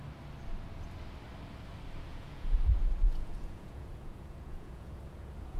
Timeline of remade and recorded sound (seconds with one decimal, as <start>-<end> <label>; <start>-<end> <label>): 0.0-2.1 recorded; 2.1-5.6 remade